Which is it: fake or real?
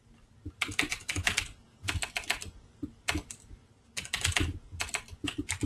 real